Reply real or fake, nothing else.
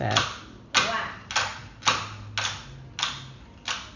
real